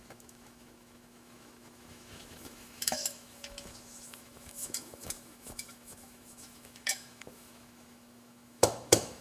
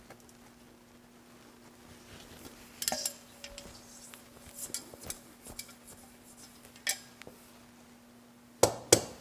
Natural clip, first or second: second